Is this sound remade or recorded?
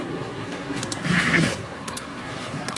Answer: remade